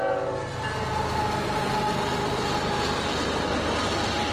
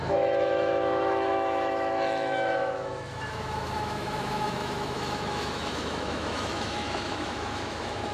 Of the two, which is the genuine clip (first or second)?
first